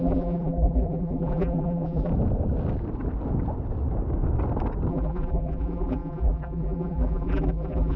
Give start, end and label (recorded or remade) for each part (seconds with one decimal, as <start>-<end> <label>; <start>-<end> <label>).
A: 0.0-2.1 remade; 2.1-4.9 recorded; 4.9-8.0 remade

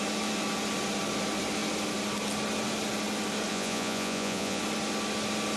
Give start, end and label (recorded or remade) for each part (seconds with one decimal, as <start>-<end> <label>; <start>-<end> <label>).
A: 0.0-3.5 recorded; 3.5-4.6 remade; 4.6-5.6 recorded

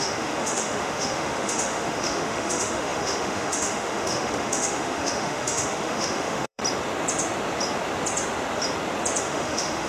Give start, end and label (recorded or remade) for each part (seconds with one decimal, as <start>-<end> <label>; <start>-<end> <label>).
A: 0.0-6.6 remade; 6.6-9.2 recorded; 9.2-9.9 remade